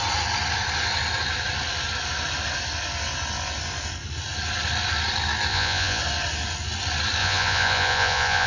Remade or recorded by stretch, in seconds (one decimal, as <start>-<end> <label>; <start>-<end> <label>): 0.0-5.5 recorded; 5.5-6.0 remade; 6.0-7.2 recorded; 7.2-8.5 remade